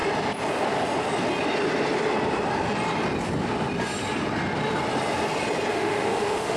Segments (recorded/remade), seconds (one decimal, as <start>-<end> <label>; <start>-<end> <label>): 0.0-5.7 recorded; 5.7-6.6 remade